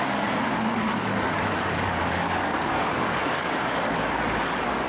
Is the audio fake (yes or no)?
yes